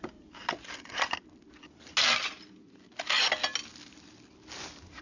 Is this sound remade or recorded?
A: recorded